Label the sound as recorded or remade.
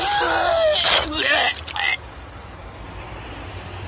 recorded